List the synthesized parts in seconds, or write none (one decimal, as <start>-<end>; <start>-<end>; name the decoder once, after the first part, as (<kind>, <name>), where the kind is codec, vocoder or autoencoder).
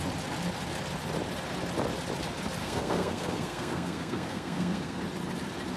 2.6-5.0 (codec, SNAC)